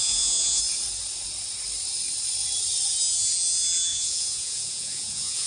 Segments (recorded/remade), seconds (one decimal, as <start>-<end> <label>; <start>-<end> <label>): 0.0-0.6 remade; 0.6-3.9 recorded; 3.9-5.5 remade